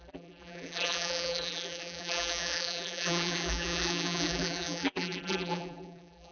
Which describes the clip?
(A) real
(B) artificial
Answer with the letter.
B